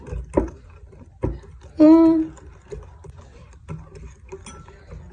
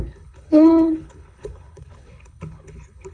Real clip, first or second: first